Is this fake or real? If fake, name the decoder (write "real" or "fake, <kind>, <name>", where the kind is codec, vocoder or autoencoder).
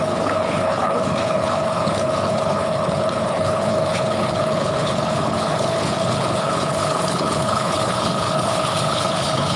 fake, codec, HILCodec